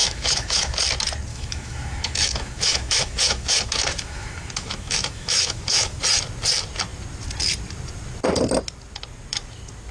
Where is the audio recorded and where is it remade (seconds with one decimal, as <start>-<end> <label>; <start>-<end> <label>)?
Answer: 0.0-0.8 remade; 0.8-1.3 recorded; 1.3-6.0 remade; 6.0-9.9 recorded